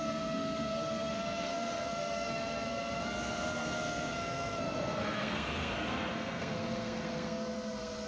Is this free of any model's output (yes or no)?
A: no